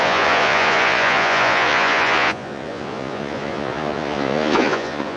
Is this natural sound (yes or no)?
no